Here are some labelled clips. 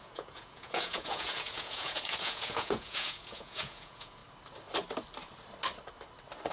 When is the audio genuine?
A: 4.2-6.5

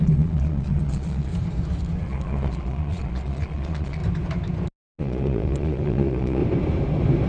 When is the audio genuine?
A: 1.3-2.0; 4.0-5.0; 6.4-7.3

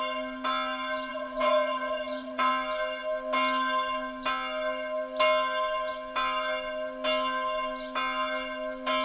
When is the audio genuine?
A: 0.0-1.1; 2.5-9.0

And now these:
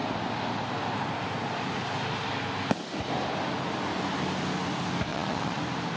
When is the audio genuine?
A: 0.0-5.1; 5.6-6.0